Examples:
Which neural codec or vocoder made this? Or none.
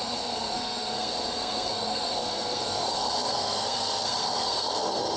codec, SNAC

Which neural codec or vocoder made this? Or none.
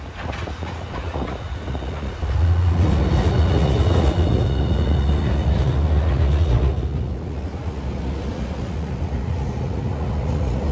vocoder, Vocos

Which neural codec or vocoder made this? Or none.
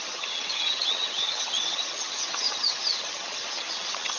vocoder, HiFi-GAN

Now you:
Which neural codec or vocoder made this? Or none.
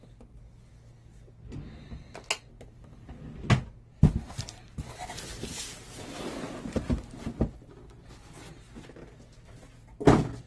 none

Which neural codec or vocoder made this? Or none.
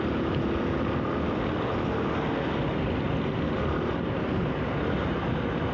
none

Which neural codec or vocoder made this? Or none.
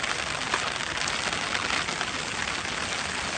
none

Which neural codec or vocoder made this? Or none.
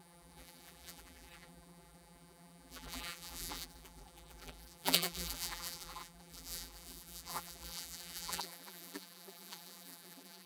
vocoder, BigVGAN v2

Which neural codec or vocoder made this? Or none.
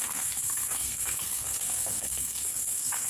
codec, SNAC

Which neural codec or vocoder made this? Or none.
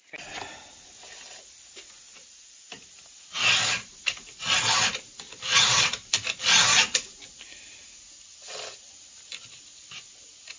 none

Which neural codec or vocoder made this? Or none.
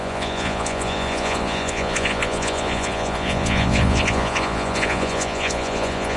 vocoder, Vocos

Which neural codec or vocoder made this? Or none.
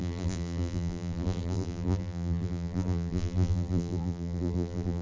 vocoder, BigVGAN v2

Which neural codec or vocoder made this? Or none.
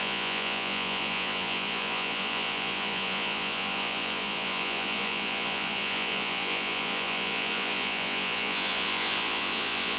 vocoder, Vocos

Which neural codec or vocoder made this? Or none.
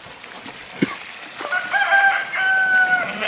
none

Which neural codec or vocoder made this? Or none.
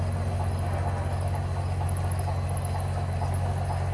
none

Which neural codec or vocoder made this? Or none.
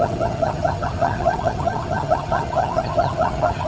vocoder, HiFi-GAN